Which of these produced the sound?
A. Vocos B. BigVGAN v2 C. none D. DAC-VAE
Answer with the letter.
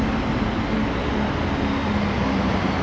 C